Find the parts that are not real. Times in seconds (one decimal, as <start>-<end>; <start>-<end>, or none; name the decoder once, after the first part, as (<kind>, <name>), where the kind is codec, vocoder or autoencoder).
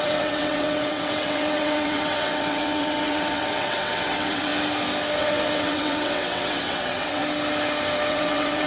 0.0-4.5 (vocoder, WaveNeXt); 5.2-7.2; 8.1-8.7